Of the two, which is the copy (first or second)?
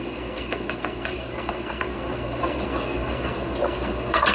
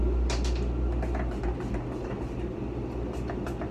first